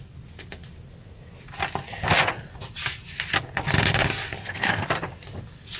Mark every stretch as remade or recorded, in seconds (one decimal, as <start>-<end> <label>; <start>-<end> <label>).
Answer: 0.0-4.4 recorded; 4.4-4.9 remade; 4.9-5.8 recorded